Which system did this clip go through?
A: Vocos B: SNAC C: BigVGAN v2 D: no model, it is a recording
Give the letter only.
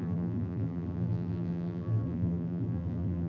C